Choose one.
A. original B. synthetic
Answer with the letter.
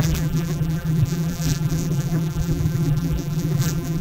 B